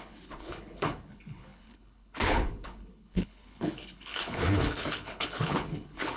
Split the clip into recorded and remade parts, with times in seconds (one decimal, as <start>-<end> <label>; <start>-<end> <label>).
0.0-6.2 remade